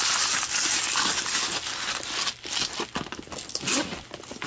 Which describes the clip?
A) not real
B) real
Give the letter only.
B